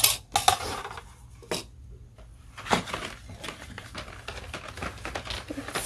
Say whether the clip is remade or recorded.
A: recorded